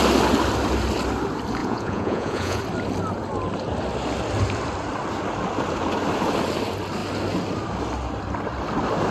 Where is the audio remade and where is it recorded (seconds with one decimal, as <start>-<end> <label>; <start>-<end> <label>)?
0.0-1.6 recorded; 1.6-2.6 remade; 2.6-9.1 recorded